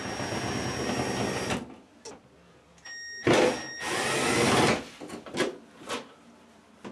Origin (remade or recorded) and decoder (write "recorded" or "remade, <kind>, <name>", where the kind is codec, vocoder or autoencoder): recorded